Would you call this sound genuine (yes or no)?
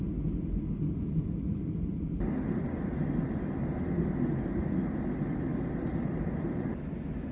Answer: yes